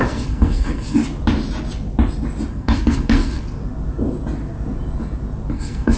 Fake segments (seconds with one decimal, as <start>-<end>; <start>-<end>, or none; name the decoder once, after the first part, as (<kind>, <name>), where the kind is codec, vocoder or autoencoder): 0.0-1.0 (codec, SNAC); 2.5-3.6; 5.5-6.0

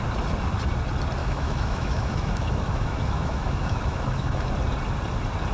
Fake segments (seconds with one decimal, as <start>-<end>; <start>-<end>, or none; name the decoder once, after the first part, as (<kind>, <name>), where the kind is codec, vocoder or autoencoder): 1.2-4.5 (autoencoder, DAC-VAE)

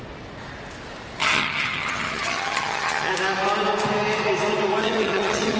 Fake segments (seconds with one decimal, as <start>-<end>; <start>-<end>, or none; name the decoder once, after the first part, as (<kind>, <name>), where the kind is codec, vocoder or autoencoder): 1.2-3.1 (vocoder, HiFi-GAN); 4.8-5.6

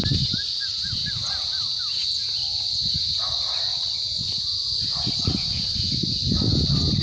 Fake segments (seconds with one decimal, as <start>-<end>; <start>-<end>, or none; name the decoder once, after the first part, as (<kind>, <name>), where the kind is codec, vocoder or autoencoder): none

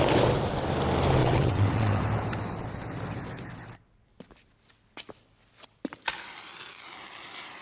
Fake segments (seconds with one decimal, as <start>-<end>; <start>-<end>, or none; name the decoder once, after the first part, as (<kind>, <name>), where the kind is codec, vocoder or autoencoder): 1.2-2.0 (vocoder, WaveNeXt)

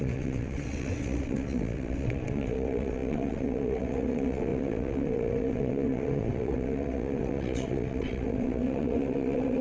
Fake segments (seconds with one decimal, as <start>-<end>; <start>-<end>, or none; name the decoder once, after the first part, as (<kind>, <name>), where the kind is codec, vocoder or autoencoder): 0.0-9.6 (vocoder, WaveNeXt)